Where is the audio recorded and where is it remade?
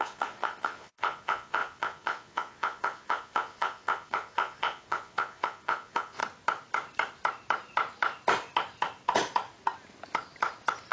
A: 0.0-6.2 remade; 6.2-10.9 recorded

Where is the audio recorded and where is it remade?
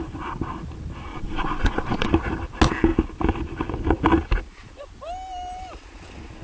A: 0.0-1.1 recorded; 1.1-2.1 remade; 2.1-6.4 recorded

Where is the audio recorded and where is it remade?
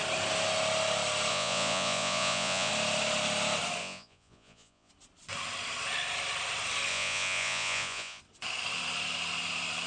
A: 0.0-1.3 recorded; 1.3-2.7 remade; 2.7-3.8 recorded; 3.8-4.9 remade; 4.9-6.9 recorded; 6.9-8.2 remade; 8.2-9.9 recorded